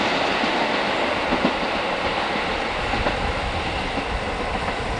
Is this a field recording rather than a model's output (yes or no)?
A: yes